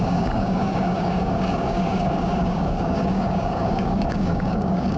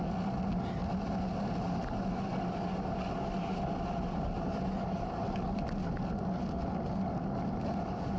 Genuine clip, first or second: second